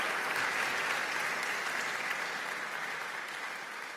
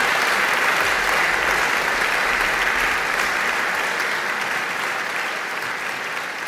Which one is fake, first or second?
second